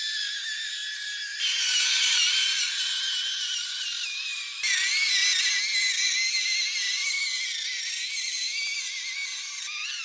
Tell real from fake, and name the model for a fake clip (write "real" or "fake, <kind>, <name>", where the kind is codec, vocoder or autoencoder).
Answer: real